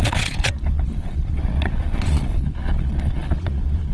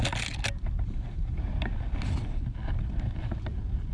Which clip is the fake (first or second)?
first